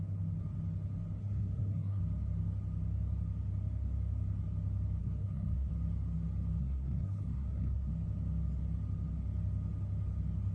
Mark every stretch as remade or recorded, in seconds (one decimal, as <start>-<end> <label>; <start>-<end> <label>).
0.0-1.2 recorded; 1.2-2.0 remade; 2.0-5.0 recorded; 5.0-5.7 remade; 5.7-6.6 recorded; 6.6-7.9 remade; 7.9-10.5 recorded